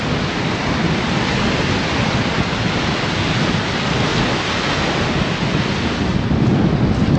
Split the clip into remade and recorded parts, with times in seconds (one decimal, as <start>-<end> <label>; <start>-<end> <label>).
0.0-7.2 recorded